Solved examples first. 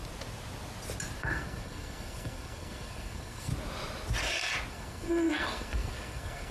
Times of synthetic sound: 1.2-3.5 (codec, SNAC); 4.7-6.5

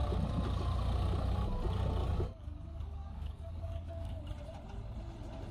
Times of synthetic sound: 2.0-4.2 (codec, DAC)